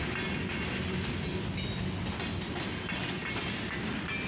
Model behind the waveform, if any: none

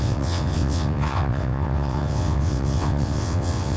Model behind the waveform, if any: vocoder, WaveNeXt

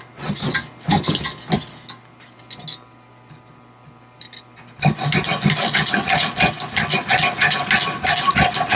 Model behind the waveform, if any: none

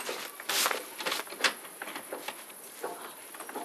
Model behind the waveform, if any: none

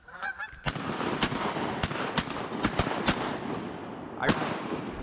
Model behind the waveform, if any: none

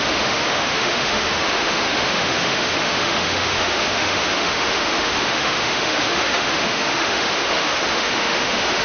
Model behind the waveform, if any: autoencoder, DAC-VAE